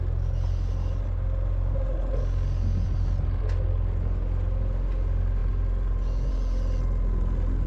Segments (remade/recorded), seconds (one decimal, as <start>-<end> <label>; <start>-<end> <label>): 0.0-7.7 recorded